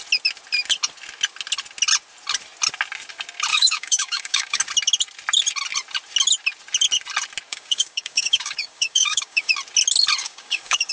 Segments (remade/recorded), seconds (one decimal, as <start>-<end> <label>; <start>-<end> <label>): 0.0-3.5 recorded; 3.5-4.6 remade; 4.6-7.5 recorded; 7.5-9.5 remade; 9.5-10.2 recorded; 10.2-10.9 remade